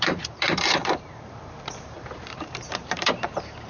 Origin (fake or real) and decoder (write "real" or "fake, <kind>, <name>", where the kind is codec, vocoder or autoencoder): fake, vocoder, BigVGAN v2